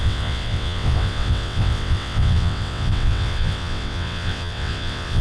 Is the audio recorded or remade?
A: remade